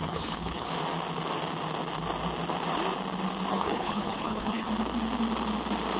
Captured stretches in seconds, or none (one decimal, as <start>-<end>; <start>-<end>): 0.7-3.5; 4.7-6.0